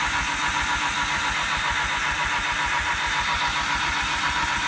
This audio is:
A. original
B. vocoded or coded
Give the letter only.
A